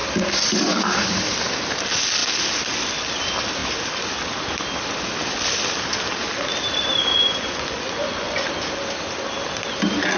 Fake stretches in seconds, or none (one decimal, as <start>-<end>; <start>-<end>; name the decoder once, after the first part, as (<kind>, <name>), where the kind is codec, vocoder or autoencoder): 7.1-8.5 (vocoder, Vocos)

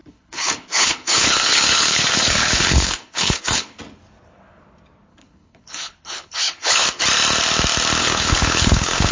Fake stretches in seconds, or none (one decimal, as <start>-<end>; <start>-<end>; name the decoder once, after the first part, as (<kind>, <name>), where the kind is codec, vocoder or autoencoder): 0.0-3.8 (codec, HILCodec); 5.1-7.0; 8.0-9.1

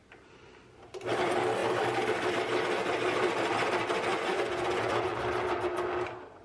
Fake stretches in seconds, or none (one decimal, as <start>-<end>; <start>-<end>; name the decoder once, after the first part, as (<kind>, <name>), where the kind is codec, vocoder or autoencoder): 4.1-5.2 (vocoder, Vocos)

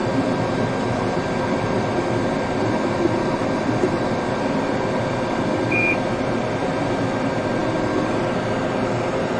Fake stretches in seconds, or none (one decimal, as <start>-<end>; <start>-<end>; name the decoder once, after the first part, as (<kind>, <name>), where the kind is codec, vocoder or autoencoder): 0.0-7.6 (vocoder, BigVGAN v2); 8.6-9.4